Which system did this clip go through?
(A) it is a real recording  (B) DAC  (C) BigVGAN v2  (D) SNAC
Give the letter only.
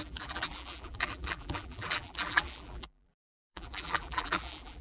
C